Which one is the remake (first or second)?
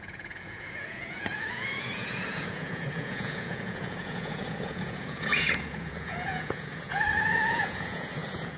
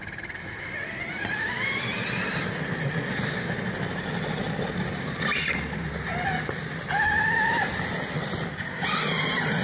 first